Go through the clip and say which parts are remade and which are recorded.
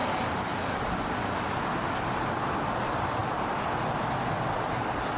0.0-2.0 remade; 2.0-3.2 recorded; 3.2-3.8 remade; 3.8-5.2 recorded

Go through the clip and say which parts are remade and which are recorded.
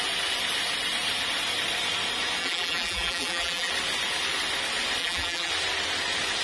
0.0-2.4 recorded; 2.4-3.7 remade; 3.7-5.0 recorded; 5.0-5.5 remade; 5.5-6.4 recorded